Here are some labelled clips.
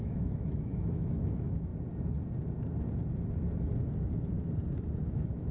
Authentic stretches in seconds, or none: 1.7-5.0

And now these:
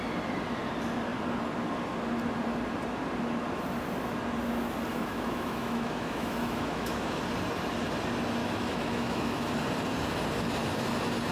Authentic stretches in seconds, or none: 0.0-4.9; 7.2-8.4; 9.5-11.3